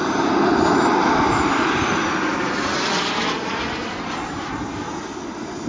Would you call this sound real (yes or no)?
yes